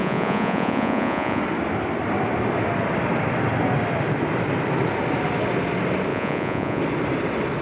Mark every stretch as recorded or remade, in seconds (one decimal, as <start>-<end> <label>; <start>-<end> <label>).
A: 0.0-1.4 remade; 1.4-6.1 recorded; 6.1-6.8 remade; 6.8-7.6 recorded

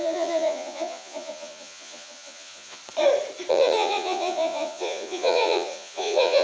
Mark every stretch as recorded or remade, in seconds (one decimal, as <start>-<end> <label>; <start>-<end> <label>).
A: 0.0-2.8 remade; 2.8-3.5 recorded; 3.5-6.4 remade

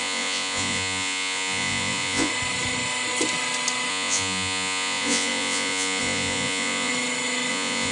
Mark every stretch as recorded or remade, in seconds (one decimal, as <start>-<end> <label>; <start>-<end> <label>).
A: 0.0-2.3 remade; 2.3-3.9 recorded; 3.9-6.9 remade; 6.9-7.5 recorded; 7.5-7.9 remade

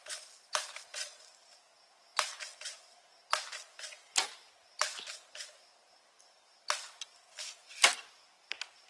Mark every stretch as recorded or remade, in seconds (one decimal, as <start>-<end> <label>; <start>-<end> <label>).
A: 0.0-8.9 recorded

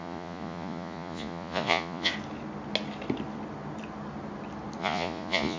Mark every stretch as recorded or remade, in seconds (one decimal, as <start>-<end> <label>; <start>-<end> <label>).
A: 0.0-2.1 remade; 2.1-4.8 recorded; 4.8-5.6 remade